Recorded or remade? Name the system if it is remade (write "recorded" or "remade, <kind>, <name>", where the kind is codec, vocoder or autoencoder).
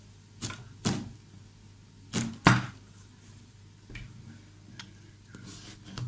recorded